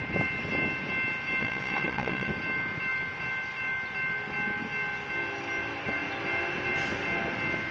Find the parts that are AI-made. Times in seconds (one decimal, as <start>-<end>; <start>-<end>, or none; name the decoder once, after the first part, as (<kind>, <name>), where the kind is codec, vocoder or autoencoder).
1.4-2.3 (vocoder, WaveNeXt)